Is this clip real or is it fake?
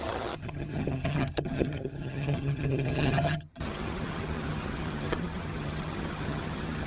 fake